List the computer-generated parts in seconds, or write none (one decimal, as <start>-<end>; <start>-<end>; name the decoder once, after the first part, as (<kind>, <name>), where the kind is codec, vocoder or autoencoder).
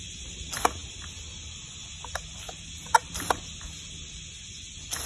none